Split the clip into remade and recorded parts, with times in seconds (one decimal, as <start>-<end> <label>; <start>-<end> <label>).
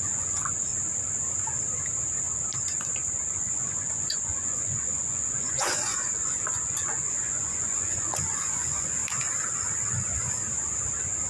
0.0-0.7 remade; 0.7-3.3 recorded; 3.3-9.0 remade; 9.0-11.3 recorded